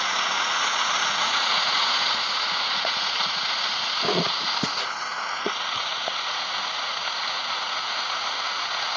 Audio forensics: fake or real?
fake